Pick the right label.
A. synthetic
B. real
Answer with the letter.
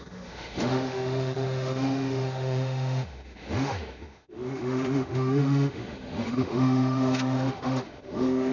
A